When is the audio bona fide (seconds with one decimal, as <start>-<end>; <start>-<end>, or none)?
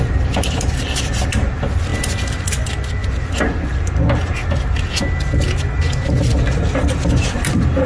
1.9-2.5; 3.0-7.1